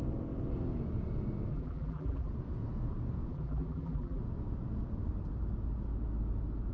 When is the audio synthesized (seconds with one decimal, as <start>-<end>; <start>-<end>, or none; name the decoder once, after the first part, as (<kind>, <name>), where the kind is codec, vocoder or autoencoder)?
1.5-2.3 (vocoder, BigVGAN v2); 3.3-4.2